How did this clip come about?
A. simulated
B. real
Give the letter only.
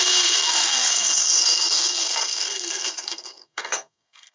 A